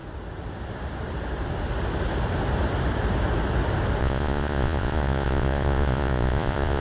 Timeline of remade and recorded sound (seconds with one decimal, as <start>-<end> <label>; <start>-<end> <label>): 0.0-4.0 recorded; 4.0-6.8 remade